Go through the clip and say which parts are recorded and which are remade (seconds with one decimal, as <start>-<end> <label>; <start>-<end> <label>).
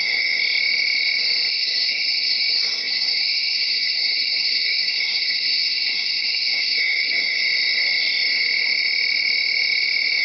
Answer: 0.0-0.4 remade; 0.4-1.5 recorded; 1.5-7.4 remade; 7.4-10.2 recorded